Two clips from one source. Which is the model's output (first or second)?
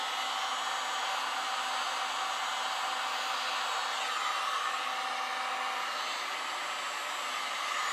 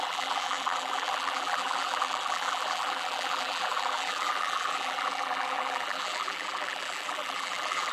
second